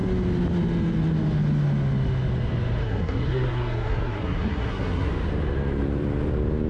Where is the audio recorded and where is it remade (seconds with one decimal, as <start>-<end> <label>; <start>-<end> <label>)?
0.0-2.8 recorded; 2.8-5.1 remade; 5.1-6.7 recorded